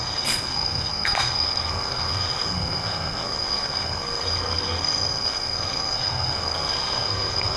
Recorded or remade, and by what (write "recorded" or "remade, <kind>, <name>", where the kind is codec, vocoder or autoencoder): remade, codec, SNAC